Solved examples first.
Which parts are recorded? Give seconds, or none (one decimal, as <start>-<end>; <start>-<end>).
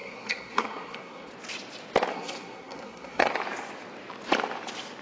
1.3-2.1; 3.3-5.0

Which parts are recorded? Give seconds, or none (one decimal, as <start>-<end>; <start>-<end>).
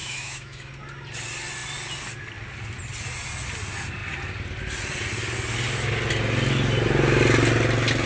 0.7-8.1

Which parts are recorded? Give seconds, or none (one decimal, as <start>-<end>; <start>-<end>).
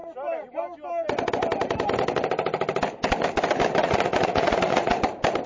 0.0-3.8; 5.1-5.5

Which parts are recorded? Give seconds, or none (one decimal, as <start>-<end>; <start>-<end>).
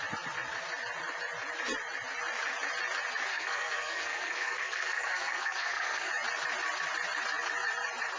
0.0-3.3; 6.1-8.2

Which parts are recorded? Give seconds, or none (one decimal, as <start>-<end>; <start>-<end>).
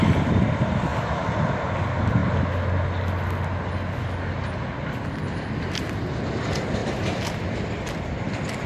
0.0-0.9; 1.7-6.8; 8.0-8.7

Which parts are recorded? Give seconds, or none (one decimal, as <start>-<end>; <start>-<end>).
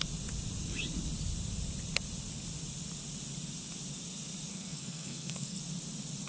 0.0-4.5; 5.6-6.3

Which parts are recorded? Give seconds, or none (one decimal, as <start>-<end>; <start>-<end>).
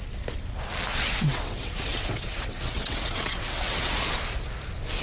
0.0-0.9; 3.9-5.0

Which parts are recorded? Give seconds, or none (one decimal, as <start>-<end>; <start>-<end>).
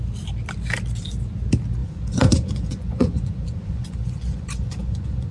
0.0-1.8